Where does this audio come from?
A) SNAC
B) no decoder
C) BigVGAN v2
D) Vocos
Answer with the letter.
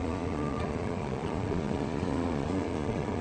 D